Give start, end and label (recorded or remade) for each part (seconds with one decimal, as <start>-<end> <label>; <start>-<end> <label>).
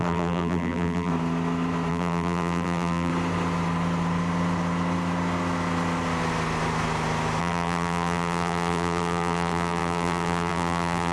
0.0-1.1 remade; 1.1-1.9 recorded; 1.9-3.1 remade; 3.1-7.4 recorded; 7.4-11.1 remade